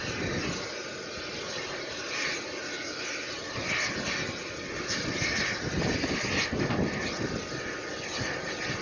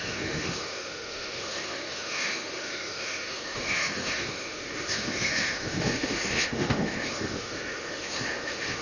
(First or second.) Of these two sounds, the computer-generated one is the second